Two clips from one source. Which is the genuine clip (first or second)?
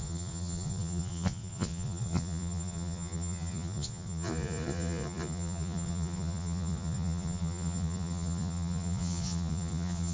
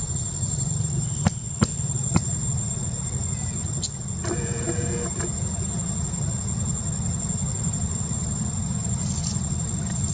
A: second